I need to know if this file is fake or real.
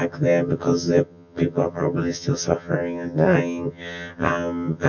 fake